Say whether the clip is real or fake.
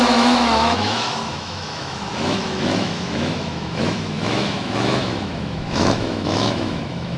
fake